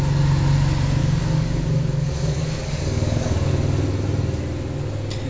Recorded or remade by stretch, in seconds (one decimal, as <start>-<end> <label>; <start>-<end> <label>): 0.0-1.0 recorded; 1.0-3.5 remade; 3.5-5.3 recorded

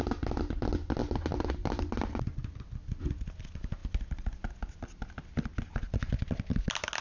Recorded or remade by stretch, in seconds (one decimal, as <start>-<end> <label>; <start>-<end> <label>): 0.0-7.0 recorded

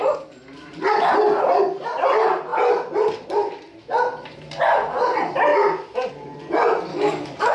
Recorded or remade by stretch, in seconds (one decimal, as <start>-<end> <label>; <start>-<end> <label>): 0.0-6.9 recorded; 6.9-7.5 remade

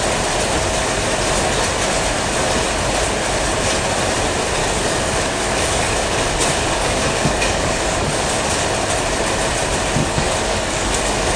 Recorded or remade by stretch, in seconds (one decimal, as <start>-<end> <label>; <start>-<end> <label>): 0.0-4.6 recorded; 4.6-8.3 remade; 8.3-10.0 recorded; 10.0-11.4 remade

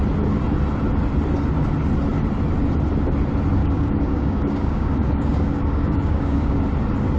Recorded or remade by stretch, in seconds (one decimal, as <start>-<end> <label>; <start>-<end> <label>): 0.0-3.6 recorded; 3.6-6.6 remade; 6.6-7.2 recorded

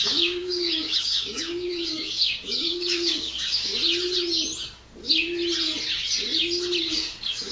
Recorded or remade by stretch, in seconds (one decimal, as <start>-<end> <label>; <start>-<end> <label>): 0.0-3.7 remade; 3.7-6.8 recorded; 6.8-7.5 remade

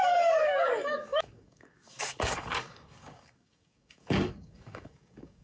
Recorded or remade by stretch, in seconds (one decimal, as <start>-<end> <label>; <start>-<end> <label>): 0.0-5.4 remade